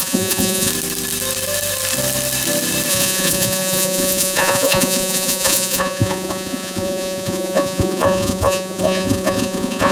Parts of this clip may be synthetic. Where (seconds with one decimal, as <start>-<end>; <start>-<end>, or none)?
0.0-0.7; 2.9-9.9